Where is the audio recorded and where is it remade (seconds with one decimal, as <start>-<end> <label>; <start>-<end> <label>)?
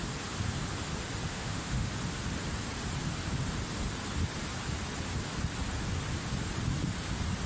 0.0-1.3 recorded; 1.3-1.9 remade; 1.9-7.5 recorded